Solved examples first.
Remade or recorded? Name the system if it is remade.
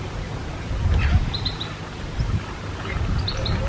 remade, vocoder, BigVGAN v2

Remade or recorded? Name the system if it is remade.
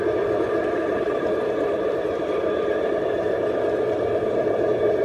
remade, vocoder, BigVGAN v2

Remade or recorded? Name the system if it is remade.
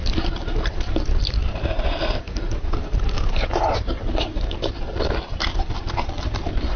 remade, vocoder, BigVGAN v2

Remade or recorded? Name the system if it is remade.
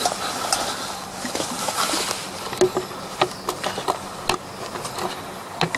recorded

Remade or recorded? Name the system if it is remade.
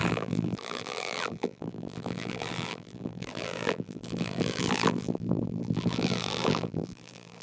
remade, vocoder, BigVGAN v2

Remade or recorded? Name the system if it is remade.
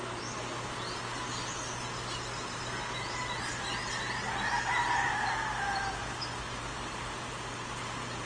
recorded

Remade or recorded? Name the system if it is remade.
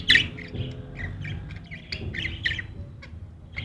recorded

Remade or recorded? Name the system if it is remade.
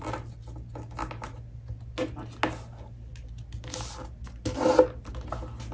recorded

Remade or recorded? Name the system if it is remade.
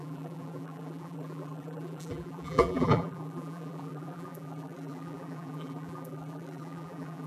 remade, vocoder, BigVGAN v2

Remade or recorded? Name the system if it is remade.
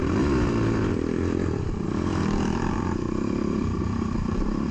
remade, vocoder, BigVGAN v2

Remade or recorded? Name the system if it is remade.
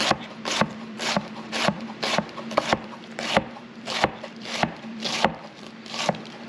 remade, vocoder, BigVGAN v2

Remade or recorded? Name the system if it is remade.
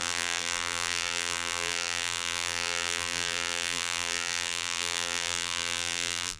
remade, vocoder, BigVGAN v2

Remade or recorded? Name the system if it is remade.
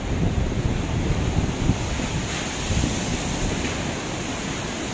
recorded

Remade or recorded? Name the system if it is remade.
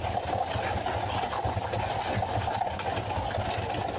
recorded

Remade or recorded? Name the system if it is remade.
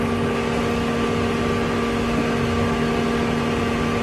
recorded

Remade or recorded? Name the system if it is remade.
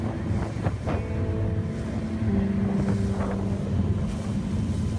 recorded